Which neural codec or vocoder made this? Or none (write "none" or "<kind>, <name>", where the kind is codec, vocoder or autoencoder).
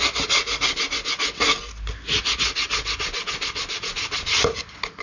none